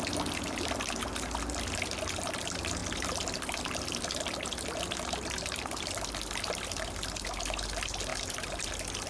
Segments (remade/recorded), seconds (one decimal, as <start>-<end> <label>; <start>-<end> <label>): 0.0-9.1 recorded